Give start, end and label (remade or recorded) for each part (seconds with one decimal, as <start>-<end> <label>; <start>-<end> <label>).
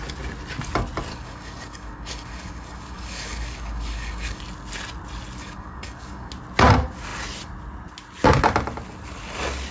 0.0-1.1 recorded; 1.1-4.4 remade; 4.4-5.4 recorded; 5.4-6.3 remade; 6.3-9.7 recorded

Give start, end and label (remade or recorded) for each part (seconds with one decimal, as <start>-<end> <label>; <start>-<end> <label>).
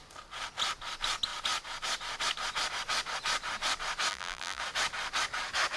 0.0-4.1 recorded; 4.1-4.6 remade; 4.6-5.8 recorded